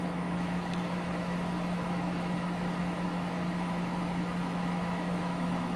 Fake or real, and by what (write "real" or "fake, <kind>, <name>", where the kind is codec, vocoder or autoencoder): fake, autoencoder, DAC-VAE